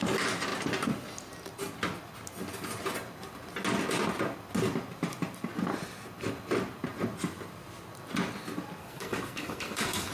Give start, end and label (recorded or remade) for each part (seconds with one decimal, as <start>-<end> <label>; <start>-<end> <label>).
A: 0.0-8.8 recorded; 8.8-10.1 remade